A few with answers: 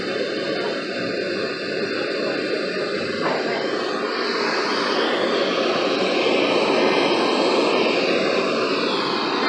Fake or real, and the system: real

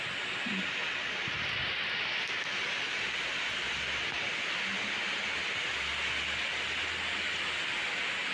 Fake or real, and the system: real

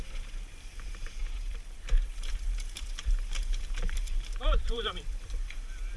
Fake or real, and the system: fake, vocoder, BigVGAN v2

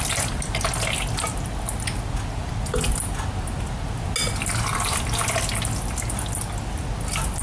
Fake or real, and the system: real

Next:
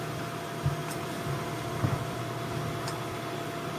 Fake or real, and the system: real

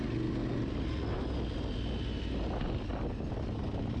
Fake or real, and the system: real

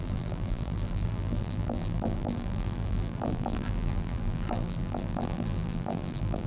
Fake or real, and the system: fake, vocoder, BigVGAN v2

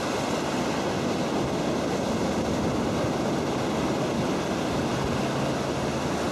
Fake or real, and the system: real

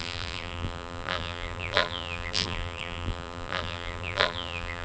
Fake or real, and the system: fake, vocoder, BigVGAN v2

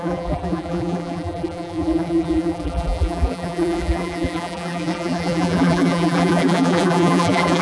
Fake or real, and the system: fake, vocoder, BigVGAN v2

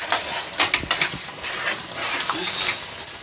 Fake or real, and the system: real